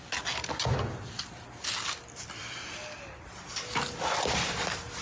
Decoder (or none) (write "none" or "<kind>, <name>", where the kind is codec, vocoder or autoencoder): none